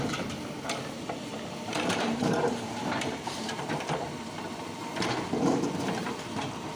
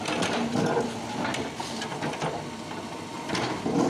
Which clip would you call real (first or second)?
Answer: second